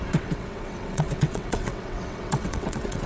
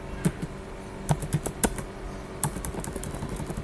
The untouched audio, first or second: second